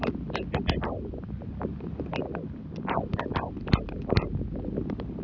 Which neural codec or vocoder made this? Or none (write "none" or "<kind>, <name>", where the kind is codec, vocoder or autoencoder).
none